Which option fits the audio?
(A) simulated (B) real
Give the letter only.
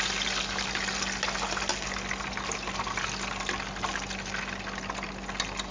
B